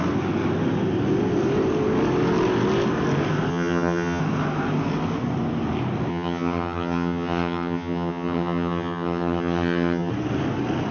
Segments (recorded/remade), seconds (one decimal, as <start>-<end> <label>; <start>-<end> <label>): 0.0-3.5 recorded; 3.5-4.2 remade; 4.2-6.1 recorded; 6.1-10.1 remade; 10.1-10.9 recorded